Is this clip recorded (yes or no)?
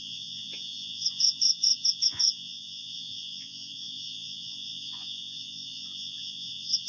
no